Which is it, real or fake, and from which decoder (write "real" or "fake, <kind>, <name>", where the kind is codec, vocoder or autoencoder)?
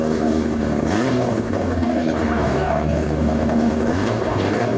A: fake, codec, DAC